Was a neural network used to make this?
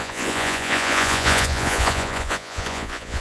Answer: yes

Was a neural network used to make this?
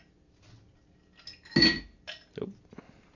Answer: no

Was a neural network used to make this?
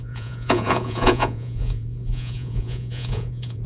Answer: yes